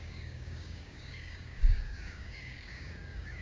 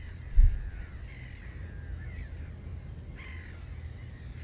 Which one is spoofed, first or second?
first